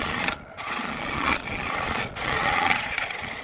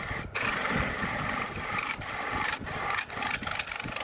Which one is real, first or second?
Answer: second